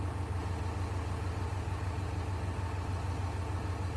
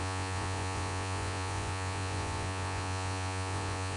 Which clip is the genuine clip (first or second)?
first